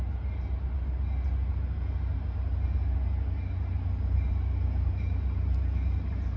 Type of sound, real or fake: real